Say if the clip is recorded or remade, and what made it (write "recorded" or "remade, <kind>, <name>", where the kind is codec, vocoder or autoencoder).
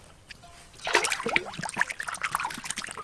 recorded